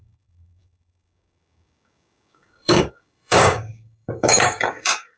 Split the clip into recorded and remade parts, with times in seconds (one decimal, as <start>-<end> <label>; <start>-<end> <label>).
0.0-5.2 remade